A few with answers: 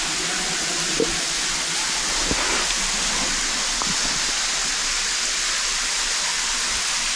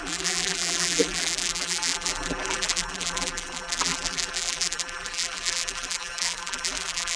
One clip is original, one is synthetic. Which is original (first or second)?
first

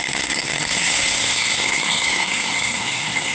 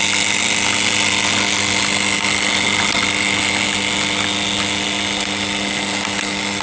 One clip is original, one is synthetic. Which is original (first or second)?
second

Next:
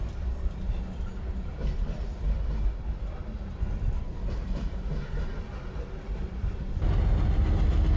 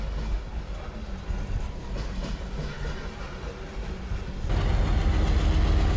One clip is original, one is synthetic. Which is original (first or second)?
second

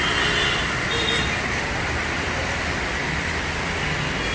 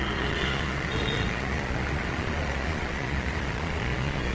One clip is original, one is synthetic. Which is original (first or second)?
first